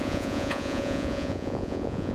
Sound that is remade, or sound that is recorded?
remade